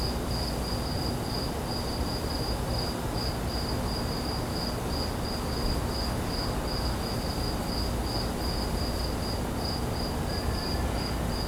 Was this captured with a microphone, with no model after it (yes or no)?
yes